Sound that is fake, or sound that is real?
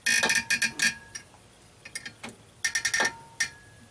real